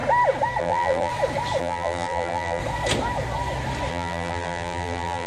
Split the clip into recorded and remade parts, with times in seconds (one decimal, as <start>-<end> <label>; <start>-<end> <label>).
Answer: 0.0-0.6 recorded; 0.6-1.1 remade; 1.1-1.6 recorded; 1.6-2.6 remade; 2.6-3.9 recorded; 3.9-5.3 remade